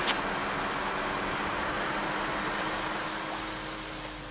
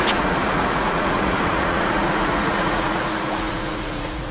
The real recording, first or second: first